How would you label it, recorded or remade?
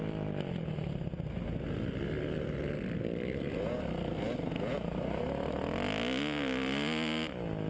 recorded